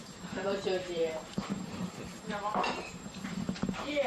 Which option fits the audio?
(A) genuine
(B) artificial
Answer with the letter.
B